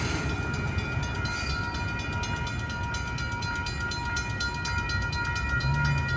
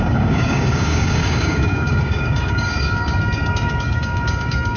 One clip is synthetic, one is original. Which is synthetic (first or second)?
second